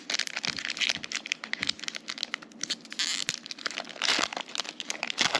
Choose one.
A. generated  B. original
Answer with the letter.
B